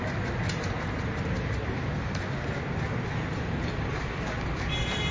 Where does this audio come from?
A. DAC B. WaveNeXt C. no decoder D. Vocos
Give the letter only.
C